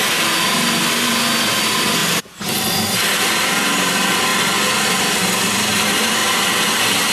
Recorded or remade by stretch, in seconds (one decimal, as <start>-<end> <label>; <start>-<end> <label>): 0.0-4.3 remade; 4.3-4.9 recorded; 4.9-6.2 remade; 6.2-7.1 recorded